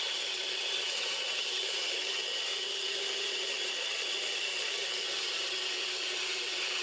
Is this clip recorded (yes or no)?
no